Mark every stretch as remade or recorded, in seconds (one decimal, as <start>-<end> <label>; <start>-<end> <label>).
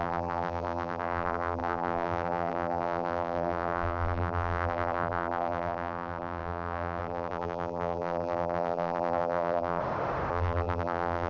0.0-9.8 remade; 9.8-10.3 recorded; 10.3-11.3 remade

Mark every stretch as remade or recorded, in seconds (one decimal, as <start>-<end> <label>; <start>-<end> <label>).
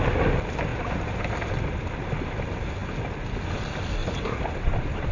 0.0-0.7 recorded; 0.7-1.3 remade; 1.3-4.0 recorded; 4.0-5.1 remade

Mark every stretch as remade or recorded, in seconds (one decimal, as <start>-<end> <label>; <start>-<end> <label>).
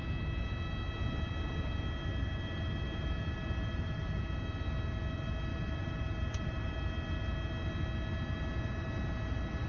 0.0-2.1 recorded; 2.1-4.2 remade; 4.2-5.5 recorded; 5.5-6.7 remade; 6.7-9.7 recorded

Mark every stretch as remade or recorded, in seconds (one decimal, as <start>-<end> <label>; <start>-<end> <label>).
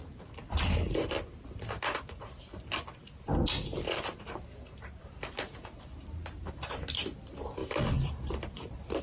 0.0-2.2 remade; 2.2-3.7 recorded; 3.7-6.9 remade; 6.9-7.6 recorded; 7.6-9.0 remade